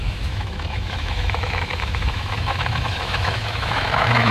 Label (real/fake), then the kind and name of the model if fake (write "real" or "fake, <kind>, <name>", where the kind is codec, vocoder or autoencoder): fake, autoencoder, DAC-VAE